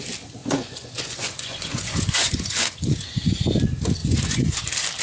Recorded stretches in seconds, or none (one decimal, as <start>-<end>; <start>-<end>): 0.0-0.4; 3.4-4.0; 4.6-5.0

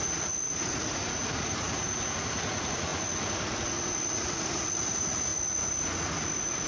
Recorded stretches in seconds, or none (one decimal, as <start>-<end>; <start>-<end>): none